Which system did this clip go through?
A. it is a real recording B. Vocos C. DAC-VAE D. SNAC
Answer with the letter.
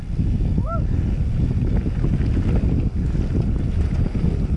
A